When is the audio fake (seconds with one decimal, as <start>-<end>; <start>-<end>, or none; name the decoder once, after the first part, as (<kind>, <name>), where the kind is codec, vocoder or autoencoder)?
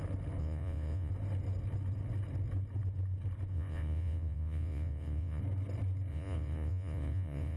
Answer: 0.4-1.1 (vocoder, Vocos); 3.5-5.4; 6.1-7.6